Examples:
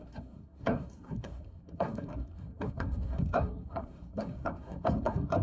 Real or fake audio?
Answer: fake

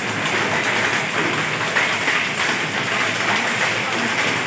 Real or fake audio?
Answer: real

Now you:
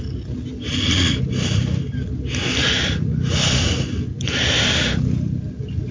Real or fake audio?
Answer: real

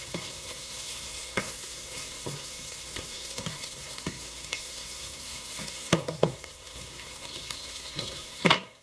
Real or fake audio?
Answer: fake